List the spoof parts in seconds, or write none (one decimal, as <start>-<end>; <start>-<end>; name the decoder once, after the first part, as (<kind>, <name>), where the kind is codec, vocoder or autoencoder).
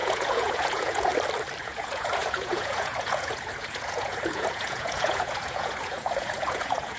0.0-1.1 (vocoder, Vocos); 1.6-7.0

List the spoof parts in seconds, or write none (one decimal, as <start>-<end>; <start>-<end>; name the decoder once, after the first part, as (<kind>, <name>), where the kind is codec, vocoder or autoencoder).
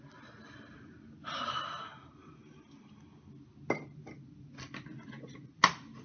none